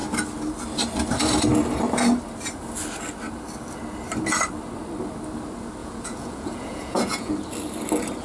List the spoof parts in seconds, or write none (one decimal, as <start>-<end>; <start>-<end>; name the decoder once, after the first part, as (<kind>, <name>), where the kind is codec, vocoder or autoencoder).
5.8-7.3 (vocoder, Vocos)